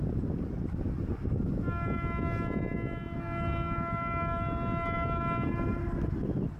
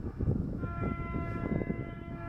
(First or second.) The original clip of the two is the first